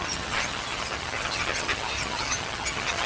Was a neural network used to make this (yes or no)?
yes